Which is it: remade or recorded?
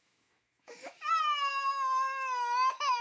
remade